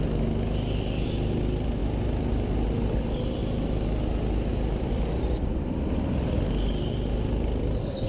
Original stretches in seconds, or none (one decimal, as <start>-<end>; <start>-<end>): 0.0-8.1